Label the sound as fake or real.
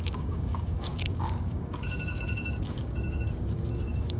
fake